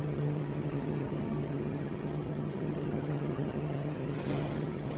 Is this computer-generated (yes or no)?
yes